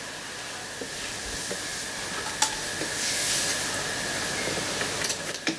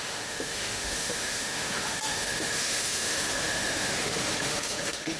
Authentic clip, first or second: first